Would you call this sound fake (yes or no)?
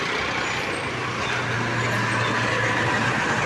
no